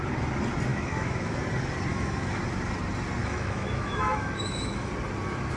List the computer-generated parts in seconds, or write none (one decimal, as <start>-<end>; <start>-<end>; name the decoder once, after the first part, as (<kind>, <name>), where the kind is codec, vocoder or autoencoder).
0.7-1.4 (autoencoder, DAC-VAE); 1.9-2.4; 3.2-4.9